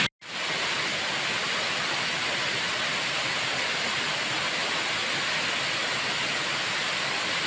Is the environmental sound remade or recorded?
recorded